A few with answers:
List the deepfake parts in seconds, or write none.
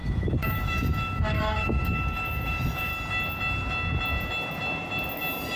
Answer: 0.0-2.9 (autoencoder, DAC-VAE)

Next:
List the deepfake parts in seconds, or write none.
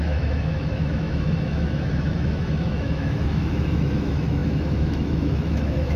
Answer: 0.0-6.0 (autoencoder, DAC-VAE)